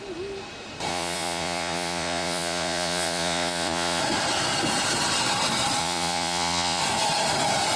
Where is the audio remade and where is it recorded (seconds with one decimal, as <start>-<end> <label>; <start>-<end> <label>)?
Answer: 0.0-0.9 recorded; 0.9-4.0 remade; 4.0-5.8 recorded; 5.8-6.8 remade; 6.8-7.8 recorded